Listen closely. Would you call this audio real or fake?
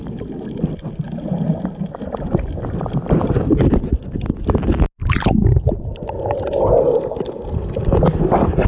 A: real